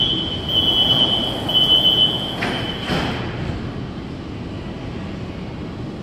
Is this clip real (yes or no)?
yes